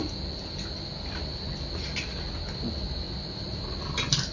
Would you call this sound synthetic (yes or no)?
no